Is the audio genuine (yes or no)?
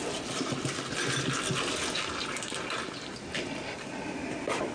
yes